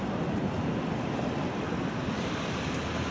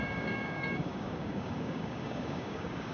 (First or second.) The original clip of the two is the first